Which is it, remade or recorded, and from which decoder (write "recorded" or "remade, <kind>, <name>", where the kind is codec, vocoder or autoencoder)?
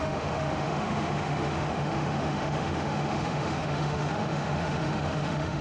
remade, autoencoder, DAC-VAE